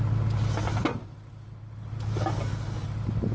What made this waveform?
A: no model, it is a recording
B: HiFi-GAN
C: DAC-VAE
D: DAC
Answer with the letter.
A